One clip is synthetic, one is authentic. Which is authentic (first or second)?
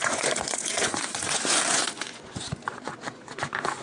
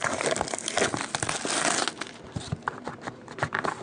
second